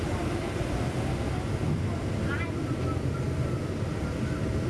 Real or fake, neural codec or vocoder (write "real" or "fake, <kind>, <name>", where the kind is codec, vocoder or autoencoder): real